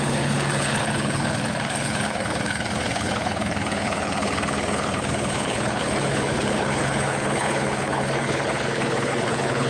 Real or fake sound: fake